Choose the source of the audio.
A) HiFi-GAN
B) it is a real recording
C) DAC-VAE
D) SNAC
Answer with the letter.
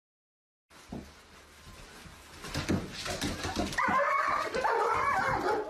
B